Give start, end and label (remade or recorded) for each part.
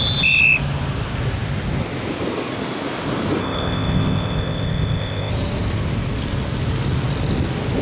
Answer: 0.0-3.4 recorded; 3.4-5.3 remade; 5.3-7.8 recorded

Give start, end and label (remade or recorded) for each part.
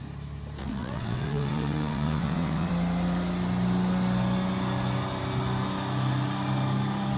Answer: 0.0-0.6 recorded; 0.6-2.7 remade; 2.7-7.2 recorded